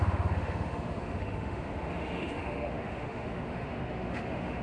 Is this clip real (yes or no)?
no